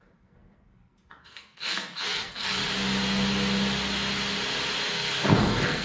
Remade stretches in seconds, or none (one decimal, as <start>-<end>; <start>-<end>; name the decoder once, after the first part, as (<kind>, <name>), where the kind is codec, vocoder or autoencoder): 0.0-2.6 (codec, SNAC); 4.9-5.8